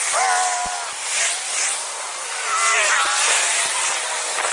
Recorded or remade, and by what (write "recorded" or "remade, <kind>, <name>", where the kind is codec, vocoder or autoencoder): recorded